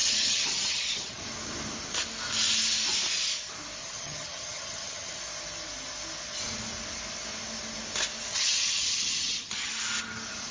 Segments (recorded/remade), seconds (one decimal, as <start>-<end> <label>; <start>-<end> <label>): 0.0-1.2 remade; 1.2-3.8 recorded; 3.8-5.2 remade; 5.2-8.3 recorded; 8.3-9.7 remade; 9.7-10.5 recorded